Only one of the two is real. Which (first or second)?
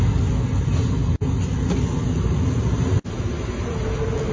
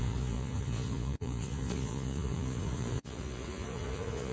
first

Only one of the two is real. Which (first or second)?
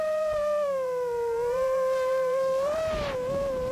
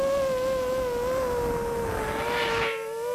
second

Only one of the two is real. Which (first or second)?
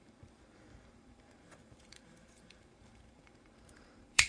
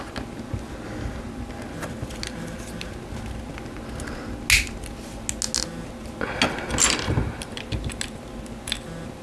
second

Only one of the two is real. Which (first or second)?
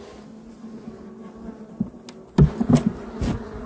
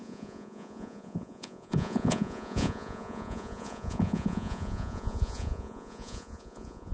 first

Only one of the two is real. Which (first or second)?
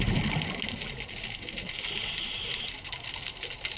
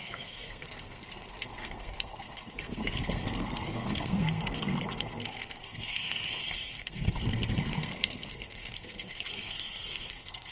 first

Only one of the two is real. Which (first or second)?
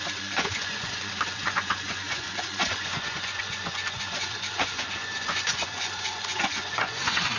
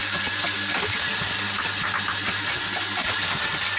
second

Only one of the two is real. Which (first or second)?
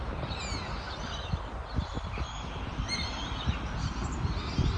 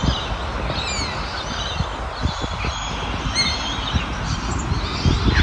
second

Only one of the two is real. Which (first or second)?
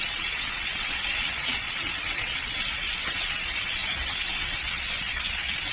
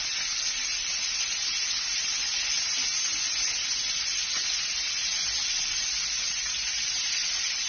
second